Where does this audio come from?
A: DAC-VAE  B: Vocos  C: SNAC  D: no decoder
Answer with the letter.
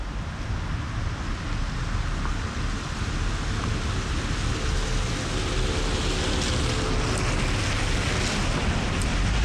D